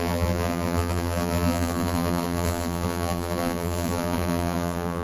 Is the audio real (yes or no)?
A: no